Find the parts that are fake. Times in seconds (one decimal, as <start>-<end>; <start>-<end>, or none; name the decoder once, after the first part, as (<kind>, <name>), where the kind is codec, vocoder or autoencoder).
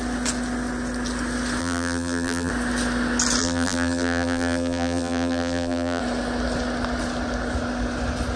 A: 1.6-2.5 (vocoder, BigVGAN v2); 3.4-6.0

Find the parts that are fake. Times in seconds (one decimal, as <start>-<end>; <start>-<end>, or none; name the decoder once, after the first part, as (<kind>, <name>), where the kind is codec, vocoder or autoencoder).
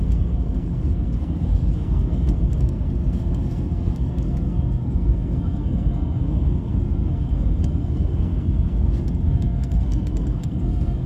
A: 0.0-11.1 (codec, SNAC)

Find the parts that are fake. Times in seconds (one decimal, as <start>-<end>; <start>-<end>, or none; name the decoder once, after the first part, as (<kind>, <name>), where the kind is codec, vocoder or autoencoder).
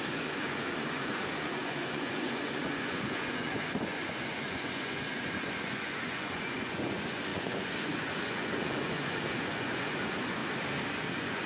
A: 0.0-10.4 (vocoder, Vocos); 10.9-11.5